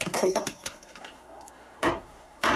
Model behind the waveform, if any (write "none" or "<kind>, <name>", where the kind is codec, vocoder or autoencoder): codec, SNAC